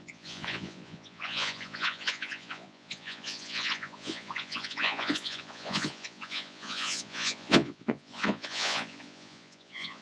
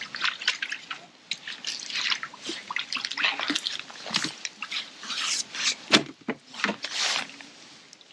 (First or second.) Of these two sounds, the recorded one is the second